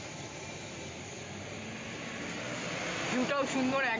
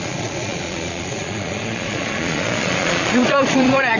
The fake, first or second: second